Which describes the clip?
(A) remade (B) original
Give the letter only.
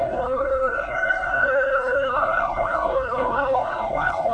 A